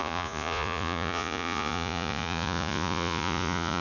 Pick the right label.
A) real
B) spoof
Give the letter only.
B